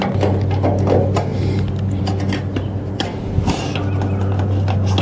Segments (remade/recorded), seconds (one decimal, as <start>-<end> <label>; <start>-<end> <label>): 0.0-5.0 recorded